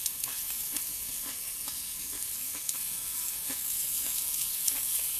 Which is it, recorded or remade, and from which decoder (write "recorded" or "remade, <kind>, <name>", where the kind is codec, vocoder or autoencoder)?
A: remade, codec, SNAC